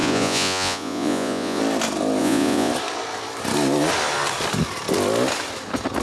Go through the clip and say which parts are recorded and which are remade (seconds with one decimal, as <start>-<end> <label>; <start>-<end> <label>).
0.0-1.6 remade; 1.6-2.2 recorded; 2.2-2.7 remade; 2.7-6.0 recorded